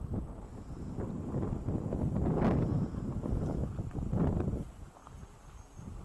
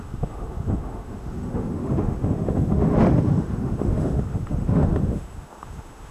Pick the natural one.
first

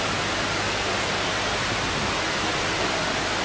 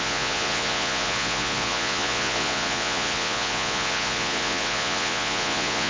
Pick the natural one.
first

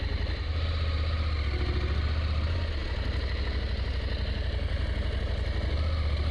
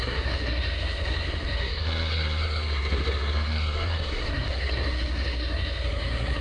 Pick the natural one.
first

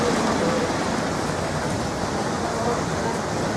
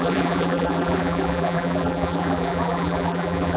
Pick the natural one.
first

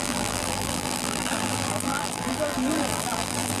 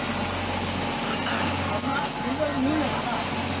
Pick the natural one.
second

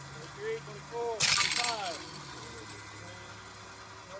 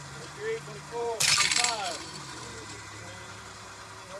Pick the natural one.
first